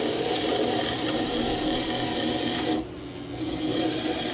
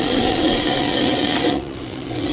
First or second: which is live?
first